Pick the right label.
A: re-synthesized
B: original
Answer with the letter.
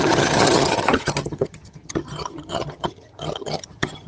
A